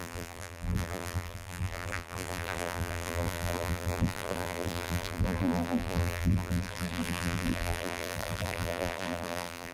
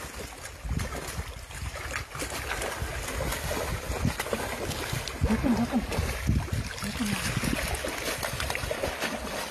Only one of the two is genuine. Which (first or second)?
second